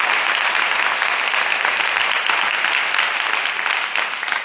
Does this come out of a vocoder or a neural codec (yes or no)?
no